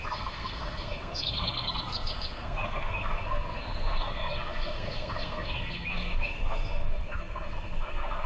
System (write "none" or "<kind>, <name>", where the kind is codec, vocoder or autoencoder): codec, SNAC